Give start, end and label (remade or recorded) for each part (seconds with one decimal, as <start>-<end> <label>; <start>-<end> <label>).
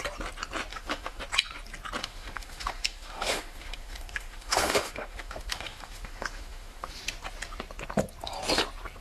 0.0-0.7 recorded; 0.7-1.2 remade; 1.2-2.0 recorded; 2.0-6.9 remade; 6.9-9.0 recorded